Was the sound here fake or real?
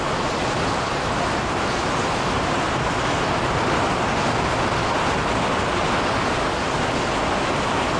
real